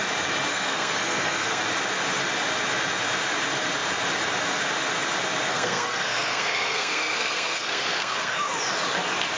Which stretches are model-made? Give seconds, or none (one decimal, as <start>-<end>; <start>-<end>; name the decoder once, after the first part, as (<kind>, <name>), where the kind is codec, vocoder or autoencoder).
0.5-1.6 (codec, SNAC); 5.5-8.5